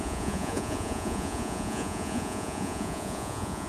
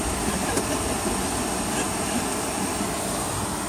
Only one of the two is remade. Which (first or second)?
first